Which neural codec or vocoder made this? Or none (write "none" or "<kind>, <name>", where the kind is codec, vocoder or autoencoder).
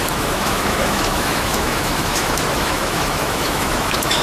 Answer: autoencoder, DAC-VAE